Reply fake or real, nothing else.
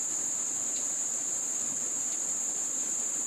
fake